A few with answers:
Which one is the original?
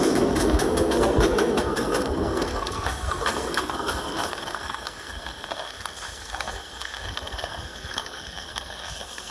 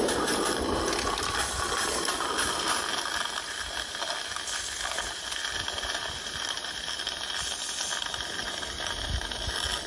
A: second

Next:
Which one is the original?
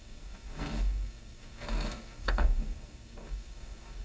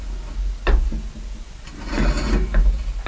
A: second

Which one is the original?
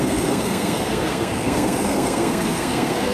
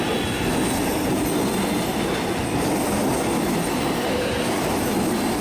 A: second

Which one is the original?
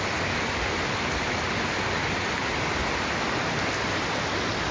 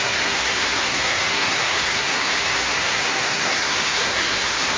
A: first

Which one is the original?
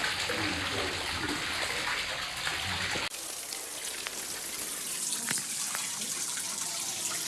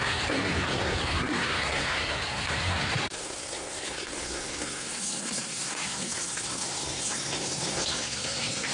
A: first